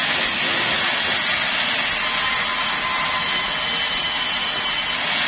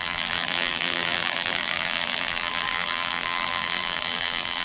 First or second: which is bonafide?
first